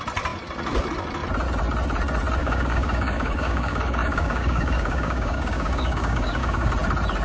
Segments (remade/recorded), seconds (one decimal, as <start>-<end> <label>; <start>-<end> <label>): 0.0-2.4 recorded; 2.4-6.7 remade; 6.7-7.2 recorded